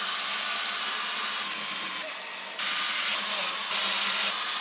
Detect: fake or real real